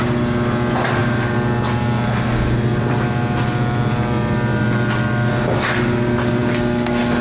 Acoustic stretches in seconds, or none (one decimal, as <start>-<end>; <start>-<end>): 0.0-7.2